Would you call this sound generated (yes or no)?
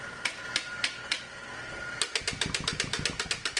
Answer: no